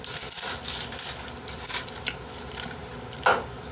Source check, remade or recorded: recorded